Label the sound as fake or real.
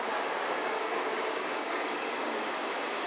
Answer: fake